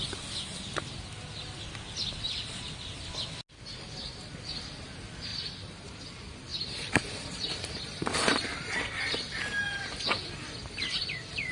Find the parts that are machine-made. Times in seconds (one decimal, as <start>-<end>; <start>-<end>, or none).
5.3-6.0; 6.5-9.0